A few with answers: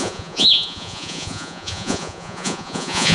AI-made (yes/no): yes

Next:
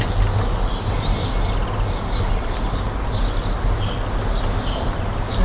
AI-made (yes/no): no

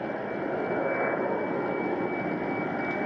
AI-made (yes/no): no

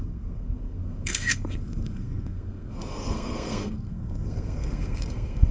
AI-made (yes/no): yes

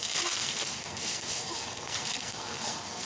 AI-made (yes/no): yes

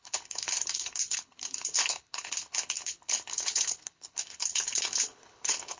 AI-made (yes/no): yes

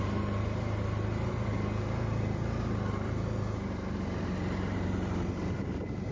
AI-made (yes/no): yes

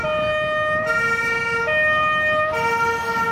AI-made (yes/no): no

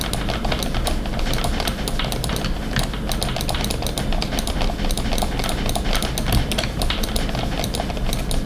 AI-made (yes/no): no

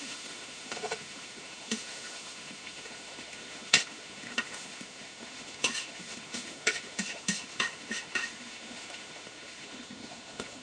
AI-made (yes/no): yes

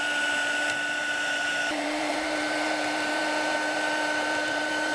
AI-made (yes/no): yes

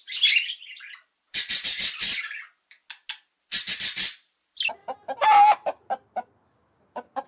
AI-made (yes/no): no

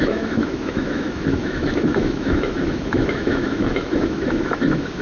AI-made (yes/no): yes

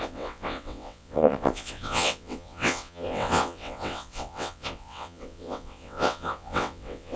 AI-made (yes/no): yes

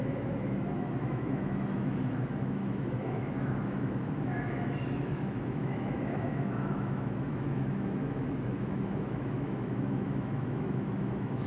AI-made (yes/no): yes